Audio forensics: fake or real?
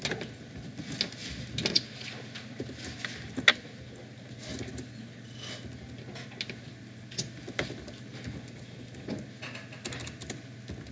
real